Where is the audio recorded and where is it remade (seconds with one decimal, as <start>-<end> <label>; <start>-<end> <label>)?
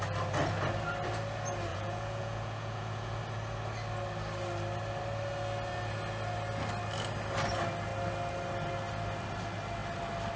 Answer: 0.0-1.7 recorded; 1.7-3.2 remade; 3.2-10.4 recorded